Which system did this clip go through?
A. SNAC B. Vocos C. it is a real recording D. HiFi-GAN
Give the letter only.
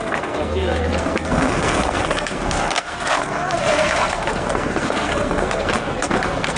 A